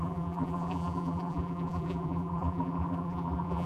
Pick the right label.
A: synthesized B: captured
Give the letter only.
A